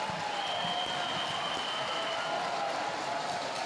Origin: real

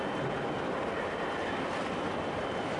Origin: real